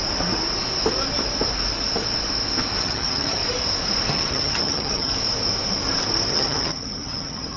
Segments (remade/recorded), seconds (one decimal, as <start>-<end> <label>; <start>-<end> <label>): 0.0-2.8 recorded; 2.8-3.4 remade; 3.4-4.1 recorded; 4.1-5.1 remade; 5.1-6.3 recorded; 6.3-7.6 remade